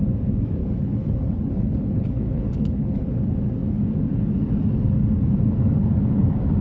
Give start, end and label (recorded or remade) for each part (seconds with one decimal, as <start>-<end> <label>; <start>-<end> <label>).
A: 0.0-0.6 recorded; 0.6-3.1 remade; 3.1-6.6 recorded